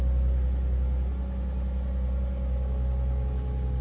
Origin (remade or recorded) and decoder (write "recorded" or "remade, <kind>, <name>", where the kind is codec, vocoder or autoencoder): recorded